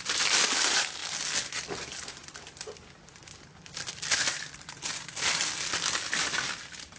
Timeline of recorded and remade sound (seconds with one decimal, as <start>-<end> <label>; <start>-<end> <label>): 0.0-7.0 recorded